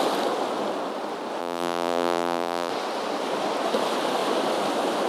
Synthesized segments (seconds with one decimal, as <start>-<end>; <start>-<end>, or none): 1.4-2.7